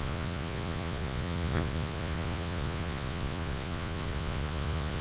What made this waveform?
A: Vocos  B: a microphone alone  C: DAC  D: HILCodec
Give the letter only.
A